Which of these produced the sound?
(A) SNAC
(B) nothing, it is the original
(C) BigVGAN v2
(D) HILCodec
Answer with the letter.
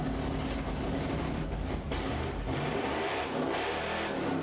B